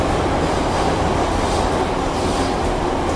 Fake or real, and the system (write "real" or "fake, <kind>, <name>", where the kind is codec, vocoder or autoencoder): real